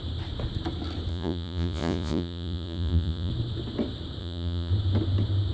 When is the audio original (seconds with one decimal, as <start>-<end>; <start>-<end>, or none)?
0.0-1.1; 3.3-4.2; 4.7-5.5